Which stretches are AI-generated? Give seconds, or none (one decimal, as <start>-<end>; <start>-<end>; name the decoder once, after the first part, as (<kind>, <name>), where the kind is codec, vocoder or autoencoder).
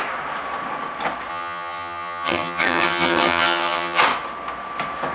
1.3-4.0 (vocoder, HiFi-GAN)